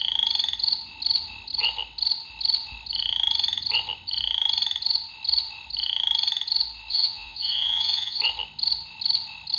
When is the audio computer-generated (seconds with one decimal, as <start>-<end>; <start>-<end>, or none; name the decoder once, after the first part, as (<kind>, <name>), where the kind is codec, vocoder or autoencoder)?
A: 6.9-8.2 (vocoder, Vocos)